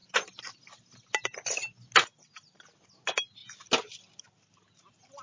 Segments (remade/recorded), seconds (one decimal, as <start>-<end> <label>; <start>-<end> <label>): 0.0-5.2 recorded